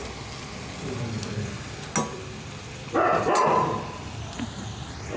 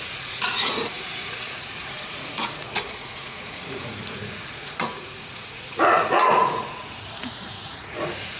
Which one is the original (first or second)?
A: first